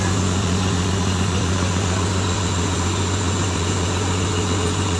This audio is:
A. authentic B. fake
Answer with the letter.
B